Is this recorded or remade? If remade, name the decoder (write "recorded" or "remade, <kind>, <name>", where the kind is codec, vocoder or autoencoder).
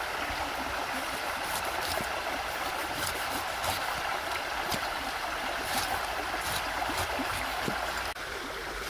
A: recorded